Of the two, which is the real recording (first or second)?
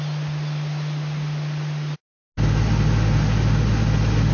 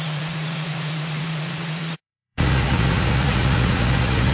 first